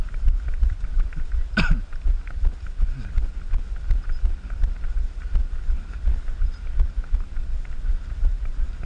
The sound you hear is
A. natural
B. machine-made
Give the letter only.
A